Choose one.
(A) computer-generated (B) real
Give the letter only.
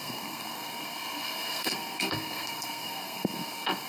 A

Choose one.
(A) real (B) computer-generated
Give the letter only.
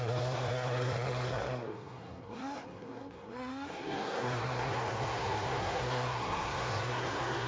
B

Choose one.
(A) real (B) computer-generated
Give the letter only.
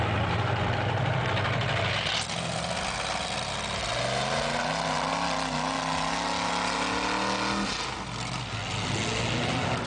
A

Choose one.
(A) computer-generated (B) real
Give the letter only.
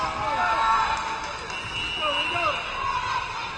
B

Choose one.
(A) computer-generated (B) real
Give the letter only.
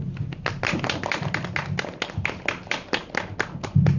B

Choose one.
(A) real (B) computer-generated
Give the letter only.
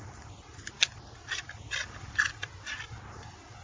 A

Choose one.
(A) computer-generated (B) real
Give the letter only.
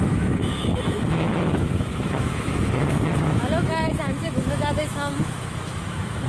A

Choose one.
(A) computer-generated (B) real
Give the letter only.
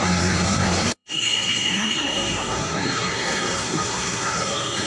A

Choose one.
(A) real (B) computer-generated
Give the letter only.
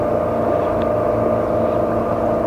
A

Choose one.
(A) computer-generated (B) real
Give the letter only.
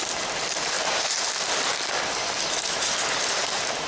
B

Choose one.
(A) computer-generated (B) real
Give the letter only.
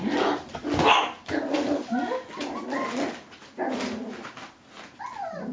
B